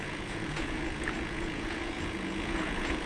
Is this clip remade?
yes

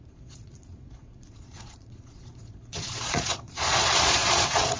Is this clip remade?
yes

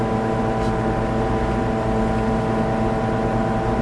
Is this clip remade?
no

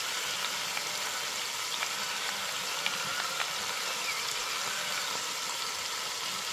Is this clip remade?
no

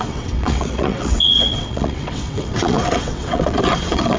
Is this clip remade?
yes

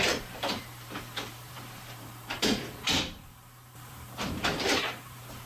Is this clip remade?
yes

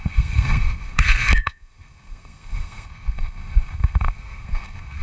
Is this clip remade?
yes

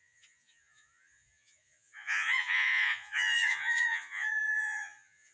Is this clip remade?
yes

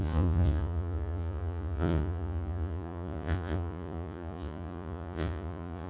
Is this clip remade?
yes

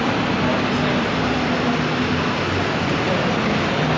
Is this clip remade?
no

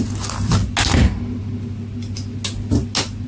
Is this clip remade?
no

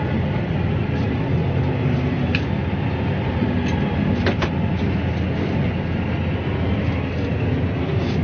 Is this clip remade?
no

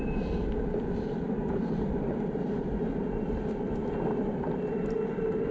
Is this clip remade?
no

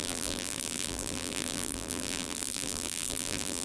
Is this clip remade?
yes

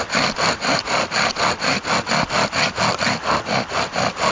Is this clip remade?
no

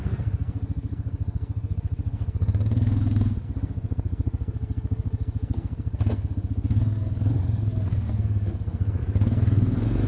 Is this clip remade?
yes